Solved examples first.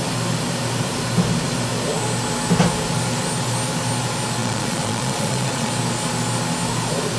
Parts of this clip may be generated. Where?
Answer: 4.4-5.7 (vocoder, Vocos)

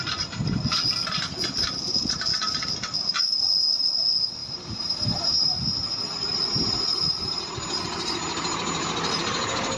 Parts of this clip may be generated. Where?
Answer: 4.4-5.5 (vocoder, BigVGAN v2)

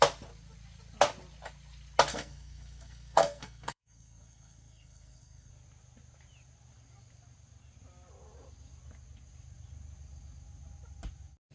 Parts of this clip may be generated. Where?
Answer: 2.1-5.5 (codec, SNAC)